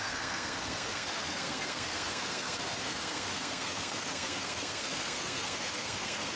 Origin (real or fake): fake